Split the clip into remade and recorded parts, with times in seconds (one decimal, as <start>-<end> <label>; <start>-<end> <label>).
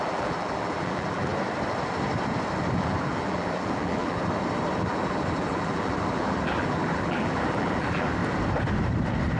0.0-1.3 remade; 1.3-2.7 recorded; 2.7-4.2 remade; 4.2-4.8 recorded; 4.8-8.2 remade; 8.2-9.4 recorded